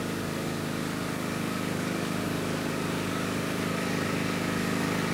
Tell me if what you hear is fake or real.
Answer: fake